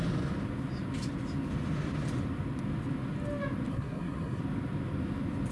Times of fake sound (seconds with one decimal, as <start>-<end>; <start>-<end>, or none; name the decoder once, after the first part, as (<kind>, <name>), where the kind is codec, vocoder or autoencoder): 3.7-4.4 (codec, SNAC)